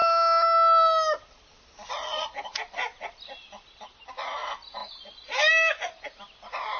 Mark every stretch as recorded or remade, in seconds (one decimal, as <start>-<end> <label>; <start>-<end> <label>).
0.0-6.8 recorded